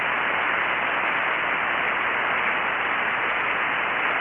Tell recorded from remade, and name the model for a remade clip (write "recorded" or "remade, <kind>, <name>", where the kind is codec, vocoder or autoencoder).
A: recorded